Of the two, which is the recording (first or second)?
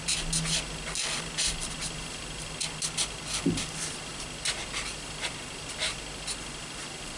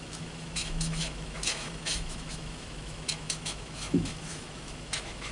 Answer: first